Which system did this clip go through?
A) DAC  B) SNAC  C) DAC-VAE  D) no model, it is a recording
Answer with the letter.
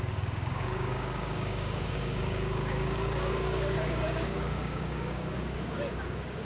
A